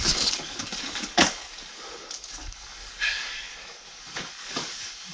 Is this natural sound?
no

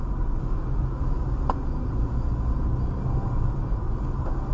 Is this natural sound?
yes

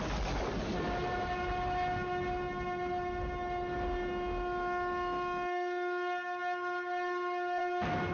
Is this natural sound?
yes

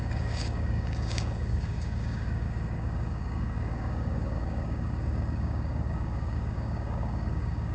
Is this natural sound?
no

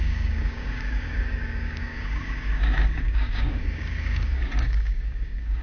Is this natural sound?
no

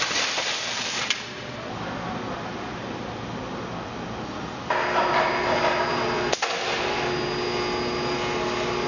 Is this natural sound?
yes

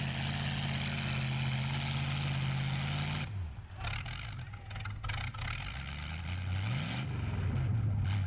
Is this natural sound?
yes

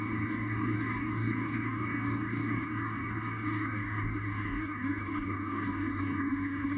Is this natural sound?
no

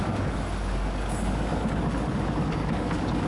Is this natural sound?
no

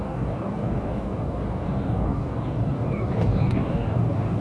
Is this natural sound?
no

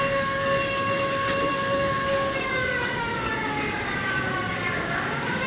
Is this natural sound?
no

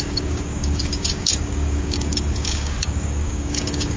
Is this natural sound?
no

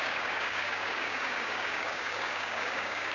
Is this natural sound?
no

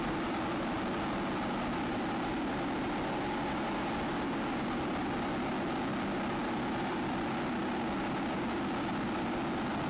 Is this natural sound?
yes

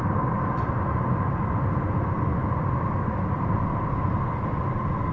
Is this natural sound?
yes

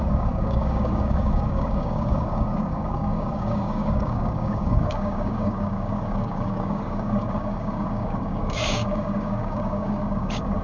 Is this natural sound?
no